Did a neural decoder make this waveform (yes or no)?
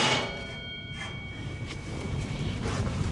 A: yes